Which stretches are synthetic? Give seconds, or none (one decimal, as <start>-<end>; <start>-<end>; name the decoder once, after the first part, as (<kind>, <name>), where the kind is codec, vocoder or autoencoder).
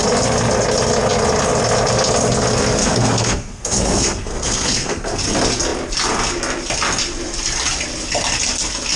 2.8-5.2 (codec, SNAC)